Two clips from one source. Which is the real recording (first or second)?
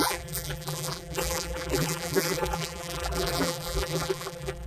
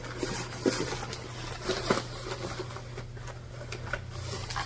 second